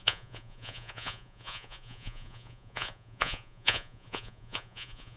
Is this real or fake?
fake